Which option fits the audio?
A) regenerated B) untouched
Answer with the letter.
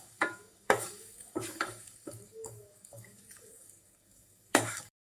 A